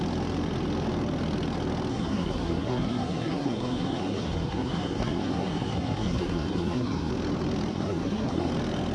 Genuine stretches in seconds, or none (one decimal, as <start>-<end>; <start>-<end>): 0.0-1.9; 7.1-7.7; 8.5-8.9